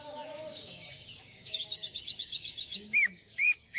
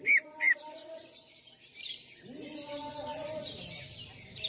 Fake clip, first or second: first